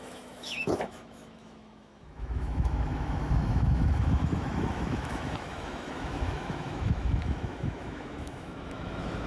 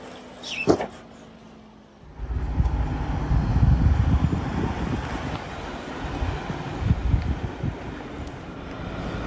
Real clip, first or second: second